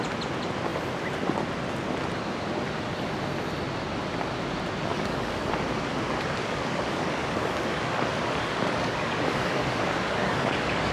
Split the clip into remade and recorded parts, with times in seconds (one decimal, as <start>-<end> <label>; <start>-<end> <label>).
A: 0.0-4.9 recorded; 4.9-5.5 remade; 5.5-6.4 recorded; 6.4-10.9 remade